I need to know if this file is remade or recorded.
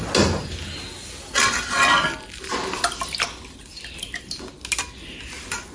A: recorded